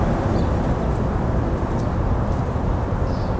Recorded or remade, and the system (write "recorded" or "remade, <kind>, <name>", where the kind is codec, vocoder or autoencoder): recorded